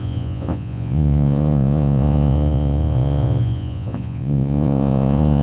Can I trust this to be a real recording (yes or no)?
no